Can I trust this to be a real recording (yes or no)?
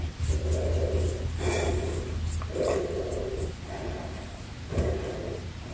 yes